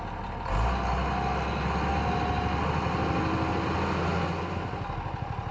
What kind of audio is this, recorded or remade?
recorded